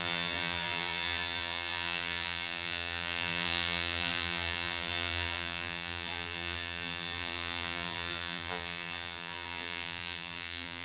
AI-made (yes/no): yes